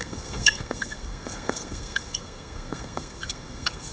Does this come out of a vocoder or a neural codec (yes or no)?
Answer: yes